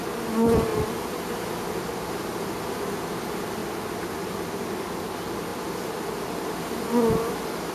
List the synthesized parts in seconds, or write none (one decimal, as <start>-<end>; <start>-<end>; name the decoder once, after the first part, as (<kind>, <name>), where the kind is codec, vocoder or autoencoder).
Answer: none